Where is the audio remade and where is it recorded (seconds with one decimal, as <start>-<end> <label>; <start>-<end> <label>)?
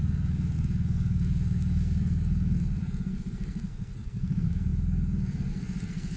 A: 0.0-6.2 remade